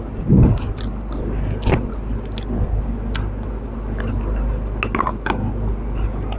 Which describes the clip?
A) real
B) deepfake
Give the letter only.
A